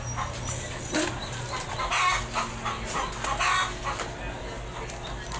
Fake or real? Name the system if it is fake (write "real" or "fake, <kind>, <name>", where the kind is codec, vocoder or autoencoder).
real